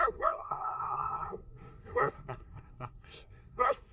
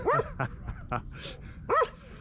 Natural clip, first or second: second